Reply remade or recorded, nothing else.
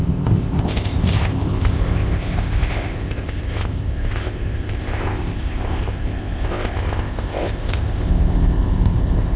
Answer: remade